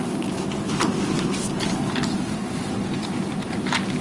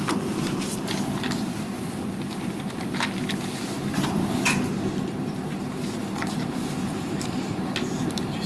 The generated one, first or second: second